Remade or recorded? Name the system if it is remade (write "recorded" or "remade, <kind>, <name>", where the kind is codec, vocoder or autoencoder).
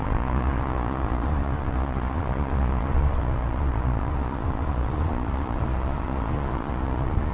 remade, vocoder, Vocos